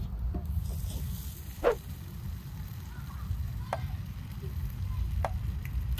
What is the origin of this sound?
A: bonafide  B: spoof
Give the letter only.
A